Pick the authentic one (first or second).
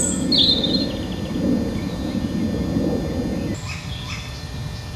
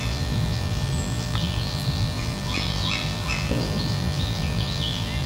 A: first